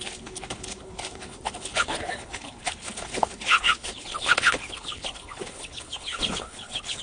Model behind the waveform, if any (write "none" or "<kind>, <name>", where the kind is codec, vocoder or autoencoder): codec, HILCodec